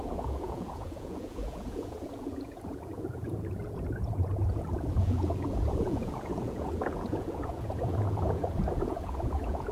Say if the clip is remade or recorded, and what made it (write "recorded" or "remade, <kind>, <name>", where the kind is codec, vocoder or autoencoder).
remade, vocoder, Vocos